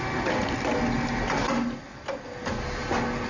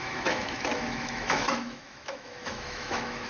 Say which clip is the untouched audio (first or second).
first